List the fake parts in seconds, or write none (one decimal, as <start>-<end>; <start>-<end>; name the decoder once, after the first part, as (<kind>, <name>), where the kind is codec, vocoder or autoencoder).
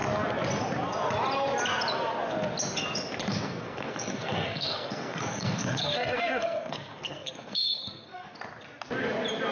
3.3-8.4 (codec, SNAC)